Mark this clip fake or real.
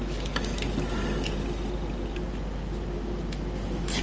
real